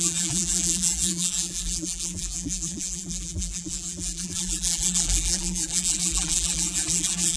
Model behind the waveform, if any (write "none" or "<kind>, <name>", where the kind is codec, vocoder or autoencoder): vocoder, BigVGAN v2